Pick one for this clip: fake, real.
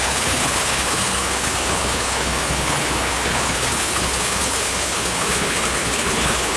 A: fake